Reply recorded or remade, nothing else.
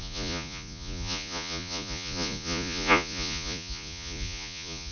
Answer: remade